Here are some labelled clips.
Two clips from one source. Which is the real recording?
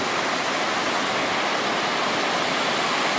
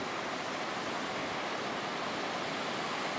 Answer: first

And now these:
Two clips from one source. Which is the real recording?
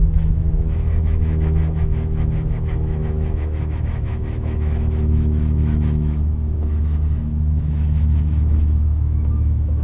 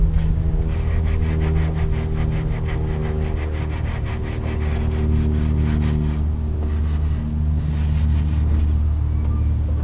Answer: second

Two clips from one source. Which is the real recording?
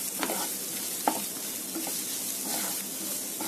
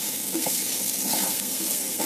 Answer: first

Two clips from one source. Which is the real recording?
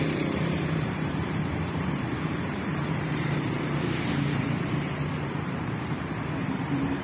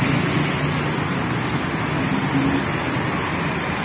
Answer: second